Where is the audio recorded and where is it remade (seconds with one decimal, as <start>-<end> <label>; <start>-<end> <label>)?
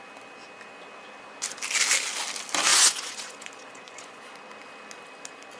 0.0-2.7 recorded; 2.7-4.2 remade; 4.2-5.6 recorded